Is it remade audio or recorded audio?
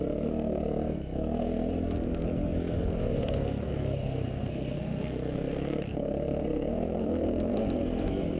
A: remade